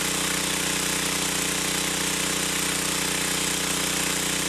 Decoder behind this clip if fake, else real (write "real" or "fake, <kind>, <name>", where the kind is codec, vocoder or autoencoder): real